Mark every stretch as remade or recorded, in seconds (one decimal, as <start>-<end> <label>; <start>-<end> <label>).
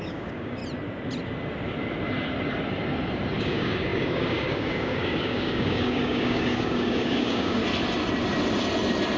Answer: 0.0-0.6 remade; 0.6-3.4 recorded; 3.4-7.6 remade; 7.6-9.2 recorded